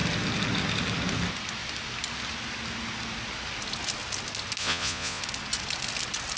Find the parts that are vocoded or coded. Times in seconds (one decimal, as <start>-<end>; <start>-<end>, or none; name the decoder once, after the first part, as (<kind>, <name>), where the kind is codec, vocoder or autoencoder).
4.6-5.2 (vocoder, Vocos)